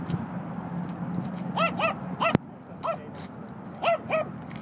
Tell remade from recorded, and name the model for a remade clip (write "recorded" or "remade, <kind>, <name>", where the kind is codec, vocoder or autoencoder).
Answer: recorded